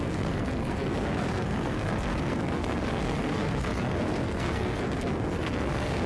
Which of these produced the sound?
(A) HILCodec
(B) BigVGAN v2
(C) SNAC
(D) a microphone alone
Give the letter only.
C